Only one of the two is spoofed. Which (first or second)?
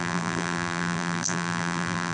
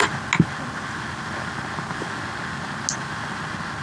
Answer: first